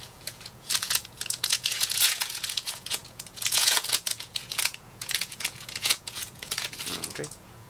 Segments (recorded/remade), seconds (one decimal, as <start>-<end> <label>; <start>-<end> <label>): 0.0-7.7 remade